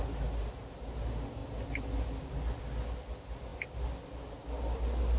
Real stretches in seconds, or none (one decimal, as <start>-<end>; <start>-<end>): 0.0-5.2